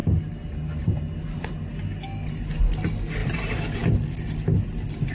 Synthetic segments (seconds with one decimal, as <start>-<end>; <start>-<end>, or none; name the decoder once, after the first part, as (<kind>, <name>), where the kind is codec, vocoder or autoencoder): 3.2-5.1 (vocoder, BigVGAN v2)